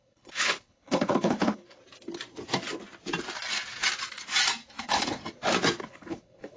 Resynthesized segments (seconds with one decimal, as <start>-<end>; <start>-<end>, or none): 0.0-1.8; 4.8-5.2; 5.8-6.6